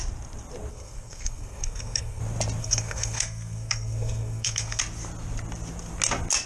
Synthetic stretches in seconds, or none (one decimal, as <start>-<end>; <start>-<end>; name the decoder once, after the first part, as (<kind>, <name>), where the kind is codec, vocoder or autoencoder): 0.7-2.2 (codec, SNAC); 2.6-4.8

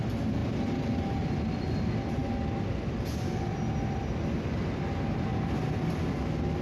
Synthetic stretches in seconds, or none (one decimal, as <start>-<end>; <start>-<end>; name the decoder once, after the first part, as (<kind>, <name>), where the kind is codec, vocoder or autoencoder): none

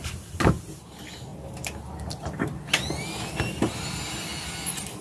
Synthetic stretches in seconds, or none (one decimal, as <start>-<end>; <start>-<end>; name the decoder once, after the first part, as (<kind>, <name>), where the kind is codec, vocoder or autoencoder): none

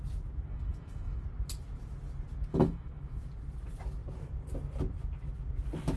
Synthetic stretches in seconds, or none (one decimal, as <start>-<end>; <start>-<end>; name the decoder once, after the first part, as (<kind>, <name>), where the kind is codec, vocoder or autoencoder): 0.5-1.2 (autoencoder, DAC-VAE); 2.5-3.2

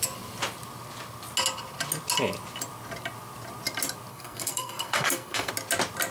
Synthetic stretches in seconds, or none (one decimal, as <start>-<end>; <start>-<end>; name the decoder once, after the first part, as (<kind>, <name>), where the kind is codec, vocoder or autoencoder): 4.1-5.5 (codec, SNAC)